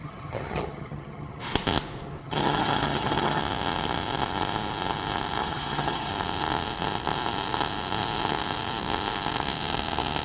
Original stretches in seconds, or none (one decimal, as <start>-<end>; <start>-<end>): 1.4-2.2; 3.4-5.4; 6.1-10.2